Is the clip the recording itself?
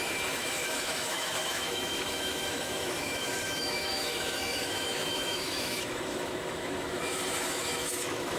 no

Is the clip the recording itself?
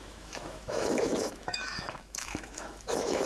no